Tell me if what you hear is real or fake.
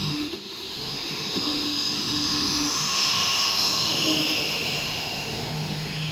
fake